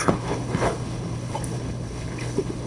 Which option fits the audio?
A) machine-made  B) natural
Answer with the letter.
A